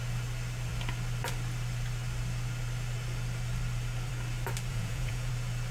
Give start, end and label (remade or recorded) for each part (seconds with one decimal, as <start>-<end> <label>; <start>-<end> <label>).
0.0-4.7 recorded; 4.7-5.3 remade; 5.3-5.7 recorded